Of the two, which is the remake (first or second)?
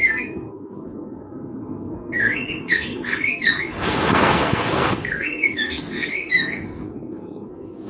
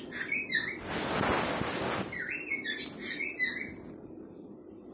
first